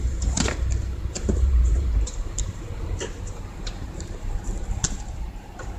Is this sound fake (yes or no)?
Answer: yes